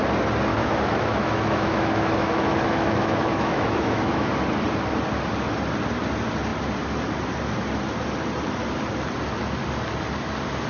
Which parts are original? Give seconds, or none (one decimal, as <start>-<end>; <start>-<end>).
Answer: 0.0-0.5; 4.3-10.7